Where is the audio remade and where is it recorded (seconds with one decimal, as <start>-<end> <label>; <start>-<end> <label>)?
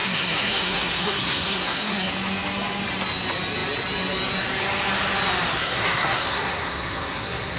0.0-2.1 remade; 2.1-5.6 recorded; 5.6-7.6 remade